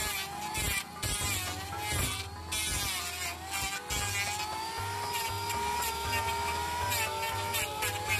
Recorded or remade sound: recorded